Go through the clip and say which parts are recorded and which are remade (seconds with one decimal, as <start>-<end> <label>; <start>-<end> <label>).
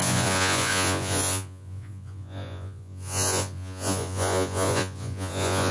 0.0-5.7 remade